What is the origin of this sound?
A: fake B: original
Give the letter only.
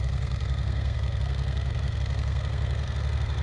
A